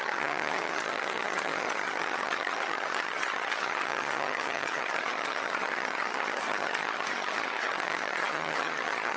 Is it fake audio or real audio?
fake